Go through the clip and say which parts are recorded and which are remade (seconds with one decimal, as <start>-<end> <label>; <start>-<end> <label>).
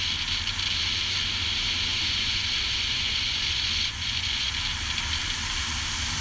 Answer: 0.0-1.9 recorded; 1.9-4.5 remade; 4.5-6.2 recorded